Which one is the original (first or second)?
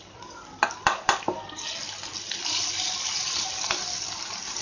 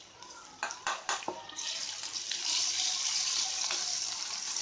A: first